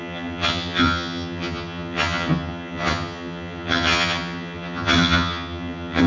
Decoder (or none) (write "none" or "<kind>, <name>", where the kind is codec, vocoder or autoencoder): vocoder, HiFi-GAN